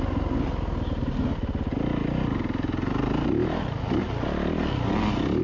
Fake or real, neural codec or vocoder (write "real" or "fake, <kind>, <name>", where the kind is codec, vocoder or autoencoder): real